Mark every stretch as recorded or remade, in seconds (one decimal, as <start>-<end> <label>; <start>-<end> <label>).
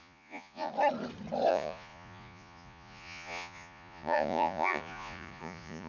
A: 0.0-0.7 remade; 0.7-1.5 recorded; 1.5-5.9 remade